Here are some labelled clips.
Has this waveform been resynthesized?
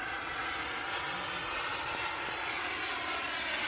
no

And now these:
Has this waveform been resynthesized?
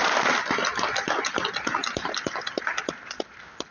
no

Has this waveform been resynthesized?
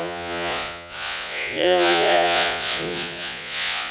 yes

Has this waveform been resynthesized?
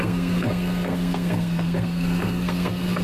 yes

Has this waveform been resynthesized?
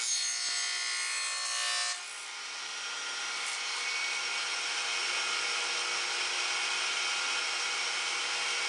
no